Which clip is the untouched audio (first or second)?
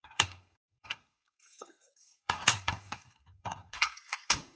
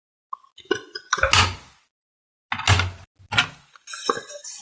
second